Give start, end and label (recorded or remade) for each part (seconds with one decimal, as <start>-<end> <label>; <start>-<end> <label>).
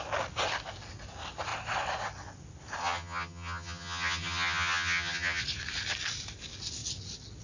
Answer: 0.0-2.8 recorded; 2.8-5.4 remade; 5.4-7.4 recorded